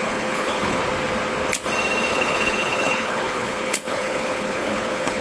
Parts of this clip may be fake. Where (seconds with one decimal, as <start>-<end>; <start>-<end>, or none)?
0.0-0.8; 2.1-5.2